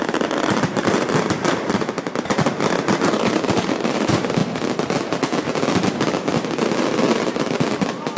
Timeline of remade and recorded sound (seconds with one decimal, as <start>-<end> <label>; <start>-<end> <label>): 0.0-4.4 remade; 4.4-8.2 recorded